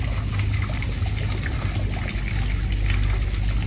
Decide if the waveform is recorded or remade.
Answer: recorded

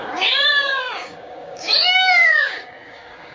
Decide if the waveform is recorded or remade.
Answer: remade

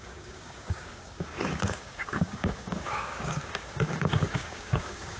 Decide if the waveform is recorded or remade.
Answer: remade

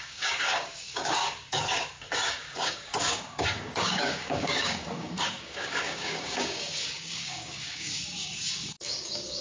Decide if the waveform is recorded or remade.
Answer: remade